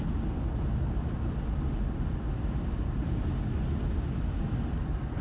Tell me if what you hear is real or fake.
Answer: real